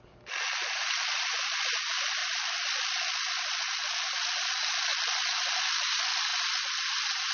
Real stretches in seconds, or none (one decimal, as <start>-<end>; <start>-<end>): 0.0-7.3